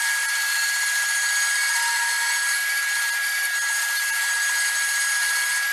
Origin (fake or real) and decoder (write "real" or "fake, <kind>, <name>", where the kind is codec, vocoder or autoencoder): real